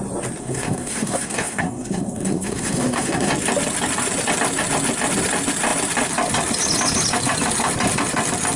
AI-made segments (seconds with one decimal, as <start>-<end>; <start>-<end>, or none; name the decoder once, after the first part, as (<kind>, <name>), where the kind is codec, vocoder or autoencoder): 0.4-3.3 (codec, SNAC)